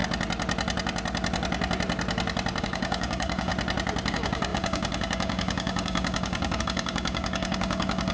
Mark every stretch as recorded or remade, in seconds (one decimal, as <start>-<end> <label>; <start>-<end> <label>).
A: 0.0-2.6 recorded; 2.6-3.5 remade; 3.5-4.1 recorded; 4.1-8.1 remade